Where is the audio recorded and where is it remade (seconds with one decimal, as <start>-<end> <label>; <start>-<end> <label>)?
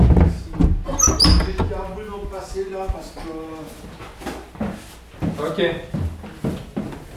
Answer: 0.0-7.2 recorded